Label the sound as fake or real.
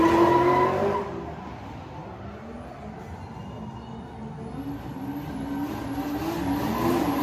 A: real